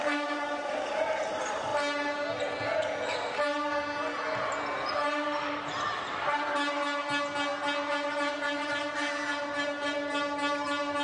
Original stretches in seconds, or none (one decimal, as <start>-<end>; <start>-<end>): 0.0-11.0